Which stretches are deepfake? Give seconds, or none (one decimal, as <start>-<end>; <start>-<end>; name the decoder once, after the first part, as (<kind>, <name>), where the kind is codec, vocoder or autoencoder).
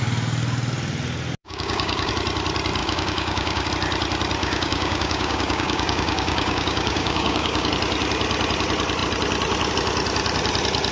1.4-2.1 (codec, DAC); 2.8-3.7; 4.4-7.7